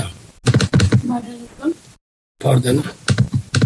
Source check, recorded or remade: recorded